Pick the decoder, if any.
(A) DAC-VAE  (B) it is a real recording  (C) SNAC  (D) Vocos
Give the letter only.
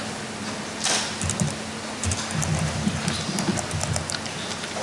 B